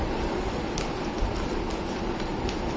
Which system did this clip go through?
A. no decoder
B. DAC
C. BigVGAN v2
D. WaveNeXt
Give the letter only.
A